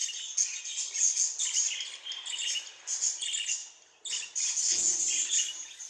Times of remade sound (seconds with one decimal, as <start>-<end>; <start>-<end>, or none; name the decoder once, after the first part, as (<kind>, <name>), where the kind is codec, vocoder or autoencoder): none